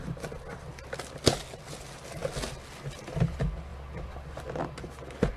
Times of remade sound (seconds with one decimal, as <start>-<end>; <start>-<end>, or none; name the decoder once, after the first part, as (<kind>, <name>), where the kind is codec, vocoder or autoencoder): none